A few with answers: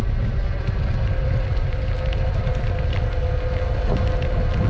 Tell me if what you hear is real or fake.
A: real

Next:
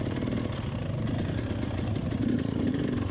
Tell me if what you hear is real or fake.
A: real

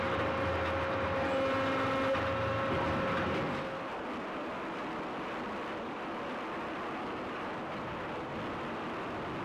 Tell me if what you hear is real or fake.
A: real